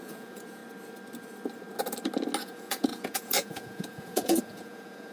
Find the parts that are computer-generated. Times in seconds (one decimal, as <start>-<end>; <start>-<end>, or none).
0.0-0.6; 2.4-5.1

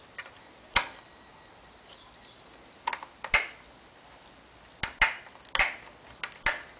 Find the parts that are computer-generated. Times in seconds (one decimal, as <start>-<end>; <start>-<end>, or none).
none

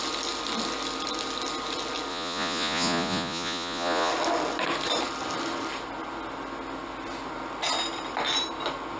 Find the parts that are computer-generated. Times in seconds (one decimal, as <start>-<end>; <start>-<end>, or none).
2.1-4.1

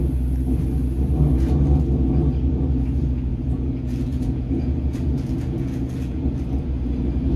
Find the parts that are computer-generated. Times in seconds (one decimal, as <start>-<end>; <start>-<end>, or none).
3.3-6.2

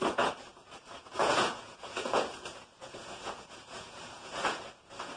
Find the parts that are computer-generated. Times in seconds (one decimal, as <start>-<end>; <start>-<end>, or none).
0.0-5.2

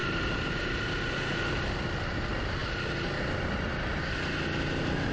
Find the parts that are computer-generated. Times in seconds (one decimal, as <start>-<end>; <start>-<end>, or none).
none